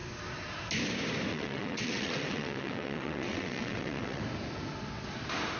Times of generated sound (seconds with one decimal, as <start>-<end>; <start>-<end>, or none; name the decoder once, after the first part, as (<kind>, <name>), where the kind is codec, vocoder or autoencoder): 1.3-4.2 (vocoder, WaveNeXt)